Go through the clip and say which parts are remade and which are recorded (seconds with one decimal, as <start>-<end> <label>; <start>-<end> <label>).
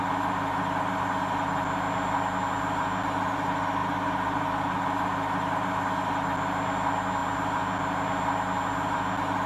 0.0-9.5 recorded